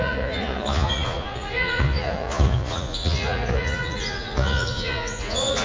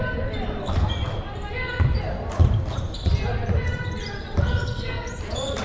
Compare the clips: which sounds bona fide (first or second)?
second